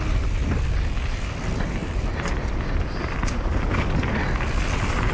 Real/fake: real